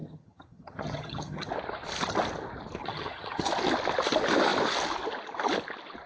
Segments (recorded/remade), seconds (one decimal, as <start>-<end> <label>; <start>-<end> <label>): 0.0-1.5 remade; 1.5-2.8 recorded; 2.8-3.5 remade; 3.5-6.1 recorded